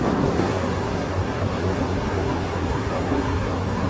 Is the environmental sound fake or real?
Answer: fake